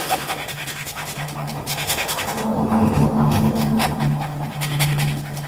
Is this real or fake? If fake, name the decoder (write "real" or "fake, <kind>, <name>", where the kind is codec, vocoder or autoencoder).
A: fake, autoencoder, DAC-VAE